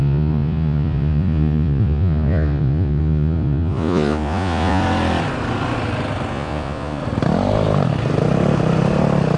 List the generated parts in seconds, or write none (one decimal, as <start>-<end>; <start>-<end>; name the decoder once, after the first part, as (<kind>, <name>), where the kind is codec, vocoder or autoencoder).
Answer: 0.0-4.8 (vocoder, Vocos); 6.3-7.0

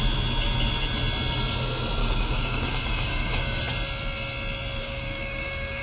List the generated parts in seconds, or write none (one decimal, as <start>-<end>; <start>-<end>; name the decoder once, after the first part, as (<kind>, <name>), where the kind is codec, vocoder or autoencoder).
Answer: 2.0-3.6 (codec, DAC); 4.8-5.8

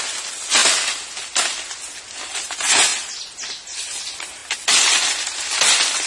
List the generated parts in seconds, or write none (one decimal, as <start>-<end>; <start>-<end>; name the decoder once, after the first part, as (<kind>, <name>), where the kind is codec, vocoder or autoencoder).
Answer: 2.9-4.0 (vocoder, BigVGAN v2)